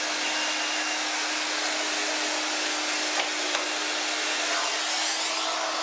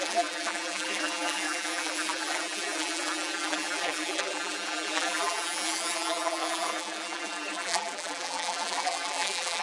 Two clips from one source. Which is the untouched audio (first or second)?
first